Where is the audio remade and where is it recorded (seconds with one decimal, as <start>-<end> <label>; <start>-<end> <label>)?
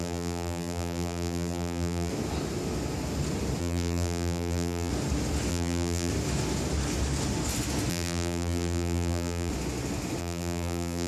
0.0-2.1 remade; 2.1-3.6 recorded; 3.6-4.9 remade; 4.9-5.5 recorded; 5.5-6.1 remade; 6.1-7.9 recorded; 7.9-9.5 remade; 9.5-10.2 recorded; 10.2-11.1 remade